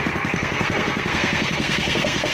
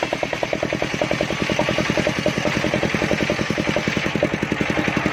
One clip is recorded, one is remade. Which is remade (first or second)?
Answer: first